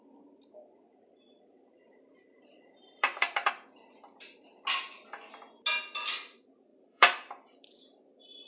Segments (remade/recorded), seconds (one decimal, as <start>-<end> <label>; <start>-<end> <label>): 0.0-1.8 recorded; 1.8-3.5 remade; 3.5-6.7 recorded; 6.7-7.8 remade; 7.8-8.5 recorded